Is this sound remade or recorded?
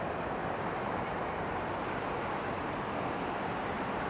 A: recorded